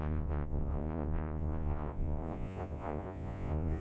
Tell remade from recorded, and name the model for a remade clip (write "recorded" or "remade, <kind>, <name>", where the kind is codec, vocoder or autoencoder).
remade, vocoder, Vocos